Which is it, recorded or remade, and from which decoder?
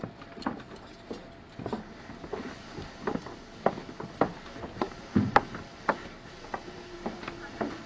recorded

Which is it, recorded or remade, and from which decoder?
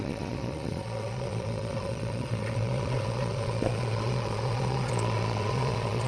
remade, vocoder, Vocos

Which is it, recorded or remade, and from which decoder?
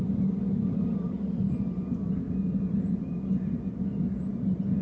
recorded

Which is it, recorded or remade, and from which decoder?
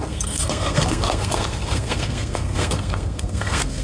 remade, codec, SNAC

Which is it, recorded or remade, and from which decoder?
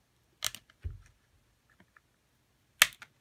recorded